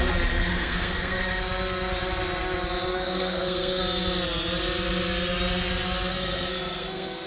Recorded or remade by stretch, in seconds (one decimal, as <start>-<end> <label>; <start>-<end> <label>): 0.0-0.5 recorded; 0.5-1.2 remade; 1.2-2.9 recorded; 2.9-3.8 remade; 3.8-6.1 recorded; 6.1-7.3 remade